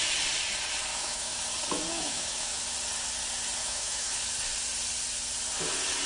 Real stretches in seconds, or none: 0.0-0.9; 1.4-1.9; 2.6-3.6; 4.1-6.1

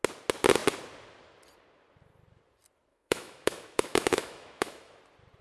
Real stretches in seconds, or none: 0.0-2.9; 5.0-5.4

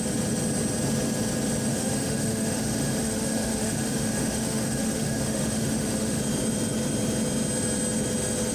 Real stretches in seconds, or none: 0.0-1.7; 6.2-8.5

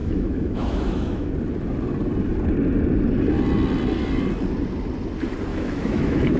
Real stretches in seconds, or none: 1.3-5.5

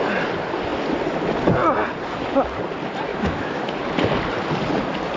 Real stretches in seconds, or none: 0.0-3.1; 3.7-5.2

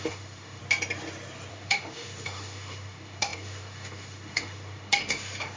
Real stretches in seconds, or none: 0.6-1.5

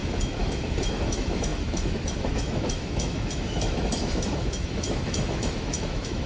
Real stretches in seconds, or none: none